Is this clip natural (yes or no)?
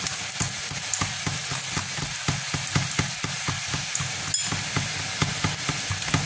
yes